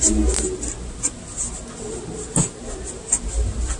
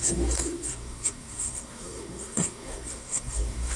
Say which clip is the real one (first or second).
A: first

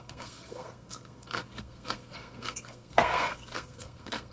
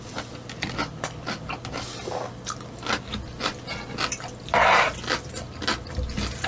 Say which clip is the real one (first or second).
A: second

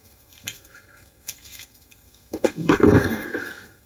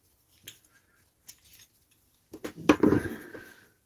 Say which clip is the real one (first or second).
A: second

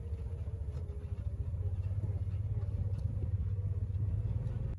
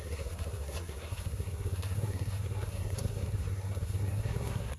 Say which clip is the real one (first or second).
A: first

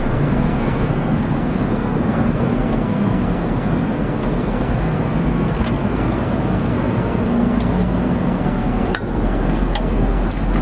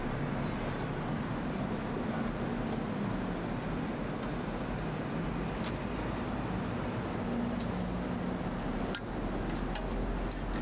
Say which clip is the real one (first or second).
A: second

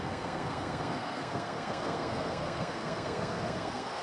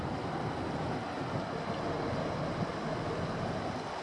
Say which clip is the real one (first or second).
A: second